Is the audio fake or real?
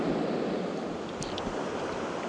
fake